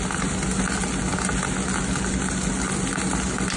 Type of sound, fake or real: real